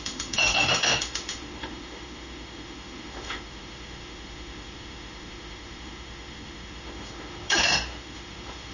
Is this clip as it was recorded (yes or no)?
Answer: no